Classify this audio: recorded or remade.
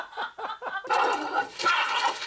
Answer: recorded